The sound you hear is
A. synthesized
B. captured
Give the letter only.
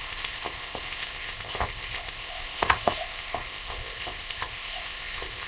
A